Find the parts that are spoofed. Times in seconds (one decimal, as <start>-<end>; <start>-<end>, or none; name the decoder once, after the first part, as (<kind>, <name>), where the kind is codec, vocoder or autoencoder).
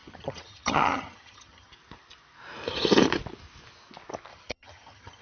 0.0-1.7 (vocoder, HiFi-GAN); 4.3-5.2